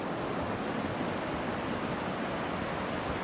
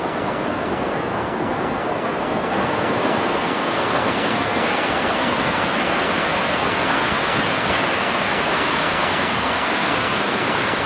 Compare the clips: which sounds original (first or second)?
first